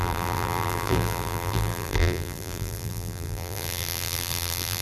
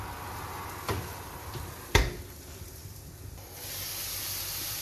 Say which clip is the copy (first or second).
first